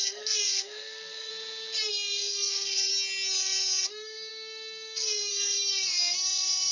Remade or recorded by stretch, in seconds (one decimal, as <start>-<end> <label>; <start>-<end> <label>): 0.0-1.3 remade; 1.3-1.9 recorded; 1.9-2.9 remade; 2.9-3.9 recorded; 3.9-6.7 remade